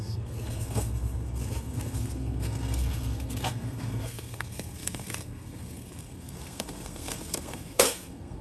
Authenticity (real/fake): fake